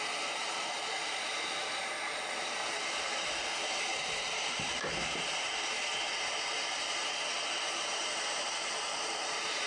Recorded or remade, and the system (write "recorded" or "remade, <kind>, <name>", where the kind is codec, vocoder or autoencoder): remade, vocoder, BigVGAN v2